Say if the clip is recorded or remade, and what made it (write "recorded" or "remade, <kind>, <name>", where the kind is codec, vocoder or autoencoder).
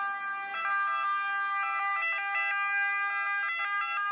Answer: recorded